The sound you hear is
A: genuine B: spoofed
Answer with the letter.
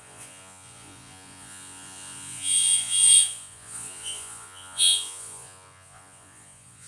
B